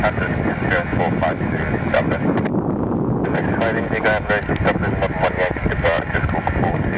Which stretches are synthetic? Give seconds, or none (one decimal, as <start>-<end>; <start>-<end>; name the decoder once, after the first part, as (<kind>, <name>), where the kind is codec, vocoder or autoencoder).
none